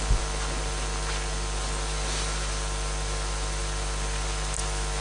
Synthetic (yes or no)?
no